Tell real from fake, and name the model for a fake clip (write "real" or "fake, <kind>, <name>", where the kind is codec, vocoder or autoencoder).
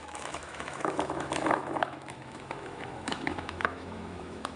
fake, autoencoder, DAC-VAE